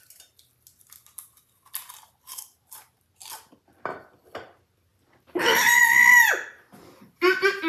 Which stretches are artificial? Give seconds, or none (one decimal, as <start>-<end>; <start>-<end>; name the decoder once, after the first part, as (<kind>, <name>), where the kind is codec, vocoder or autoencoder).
2.3-3.0 (vocoder, BigVGAN v2); 4.9-5.8